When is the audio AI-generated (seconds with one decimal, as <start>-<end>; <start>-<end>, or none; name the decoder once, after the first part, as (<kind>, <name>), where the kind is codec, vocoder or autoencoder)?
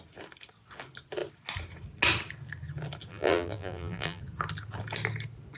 3.1-4.2 (vocoder, BigVGAN v2)